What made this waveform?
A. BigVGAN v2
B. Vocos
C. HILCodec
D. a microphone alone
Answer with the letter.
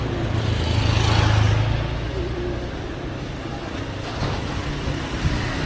D